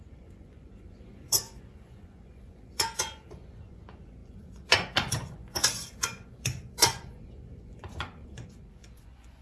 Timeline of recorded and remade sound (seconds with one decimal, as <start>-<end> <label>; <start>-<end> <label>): 0.0-9.4 remade